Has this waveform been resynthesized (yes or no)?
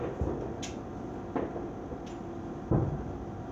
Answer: no